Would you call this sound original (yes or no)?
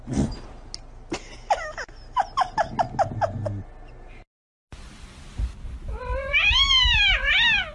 yes